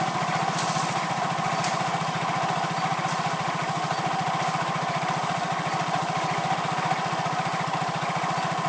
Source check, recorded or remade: recorded